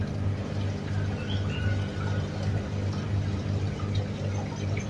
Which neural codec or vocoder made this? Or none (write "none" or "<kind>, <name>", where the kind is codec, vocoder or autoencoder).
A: none